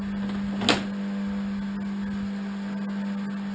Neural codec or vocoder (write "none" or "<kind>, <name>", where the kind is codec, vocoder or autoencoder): none